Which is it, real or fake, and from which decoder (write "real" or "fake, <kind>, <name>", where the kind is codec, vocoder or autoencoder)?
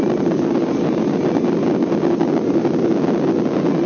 real